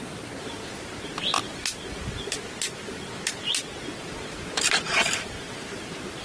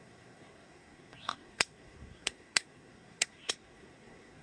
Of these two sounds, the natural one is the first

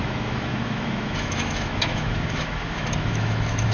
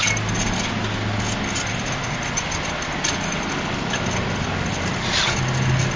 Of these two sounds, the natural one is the second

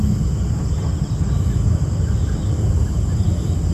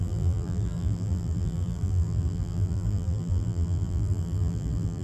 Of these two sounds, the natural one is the first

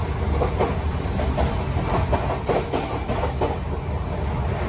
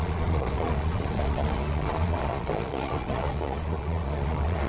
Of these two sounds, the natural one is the first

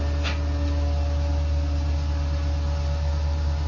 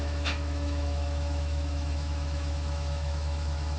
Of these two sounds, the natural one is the first